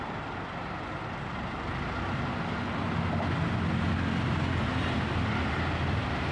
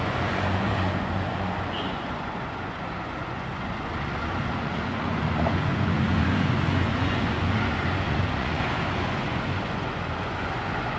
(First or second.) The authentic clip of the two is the first